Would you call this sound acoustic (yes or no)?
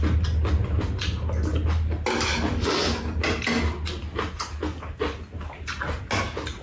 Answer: yes